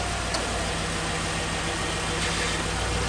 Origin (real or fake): real